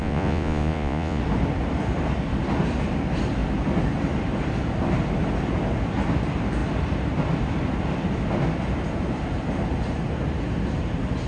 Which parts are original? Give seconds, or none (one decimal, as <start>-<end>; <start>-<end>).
1.2-11.3